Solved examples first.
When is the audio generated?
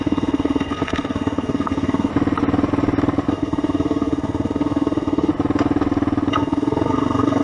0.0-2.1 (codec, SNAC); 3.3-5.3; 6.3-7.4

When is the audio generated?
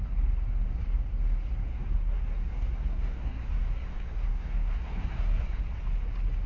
1.7-5.6 (codec, SNAC)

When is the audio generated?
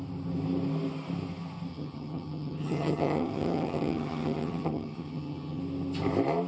1.7-5.6 (vocoder, HiFi-GAN)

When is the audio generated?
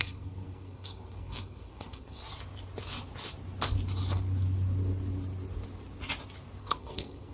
0.0-2.2 (codec, SNAC); 6.6-7.3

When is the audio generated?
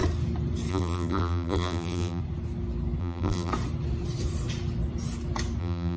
0.7-2.2 (vocoder, BigVGAN v2); 3.0-3.5; 5.6-6.0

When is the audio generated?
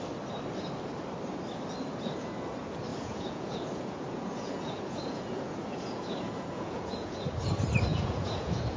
2.9-7.5 (vocoder, Vocos); 7.9-8.8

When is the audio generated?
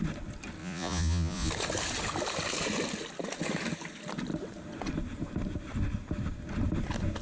0.6-1.5 (vocoder, Vocos)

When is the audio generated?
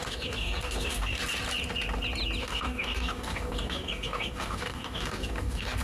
0.0-1.2 (codec, DAC); 2.4-5.8